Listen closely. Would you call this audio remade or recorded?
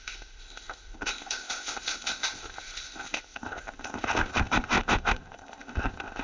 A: remade